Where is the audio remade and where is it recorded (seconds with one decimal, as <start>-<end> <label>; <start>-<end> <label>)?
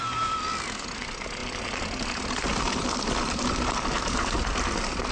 0.0-5.1 recorded